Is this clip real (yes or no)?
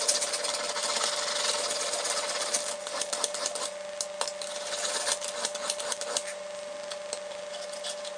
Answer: yes